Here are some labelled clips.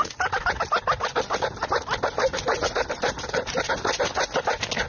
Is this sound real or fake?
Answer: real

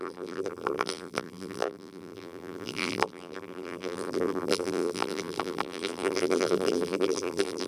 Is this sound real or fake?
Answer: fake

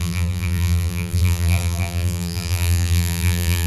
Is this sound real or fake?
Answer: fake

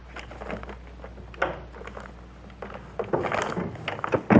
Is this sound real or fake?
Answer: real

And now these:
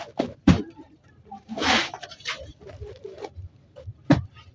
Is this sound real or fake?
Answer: fake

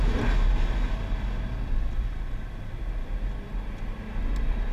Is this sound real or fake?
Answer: real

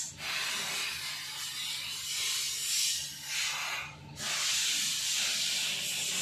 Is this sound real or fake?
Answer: real